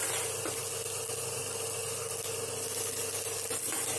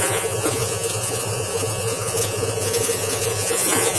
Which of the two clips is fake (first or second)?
second